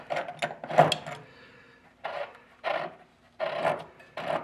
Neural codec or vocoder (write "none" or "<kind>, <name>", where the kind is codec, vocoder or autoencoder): none